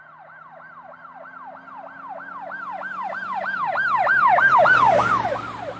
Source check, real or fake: real